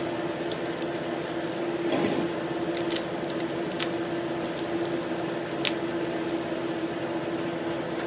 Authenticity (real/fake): real